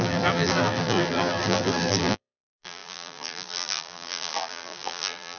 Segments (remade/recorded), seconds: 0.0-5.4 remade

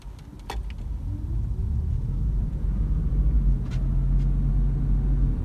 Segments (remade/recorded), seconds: 0.0-1.6 recorded; 1.6-3.1 remade; 3.1-5.4 recorded

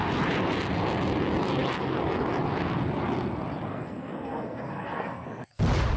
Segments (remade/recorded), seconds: 0.0-3.7 recorded; 3.7-5.6 remade; 5.6-6.0 recorded

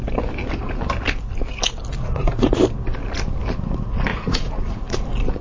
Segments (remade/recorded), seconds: 0.0-2.0 recorded; 2.0-2.6 remade; 2.6-4.1 recorded; 4.1-5.0 remade; 5.0-5.4 recorded

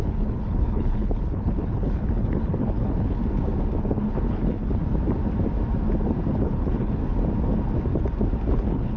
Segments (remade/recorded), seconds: 0.0-3.2 remade; 3.2-3.8 recorded; 3.8-4.8 remade; 4.8-6.3 recorded; 6.3-7.0 remade; 7.0-8.5 recorded; 8.5-9.0 remade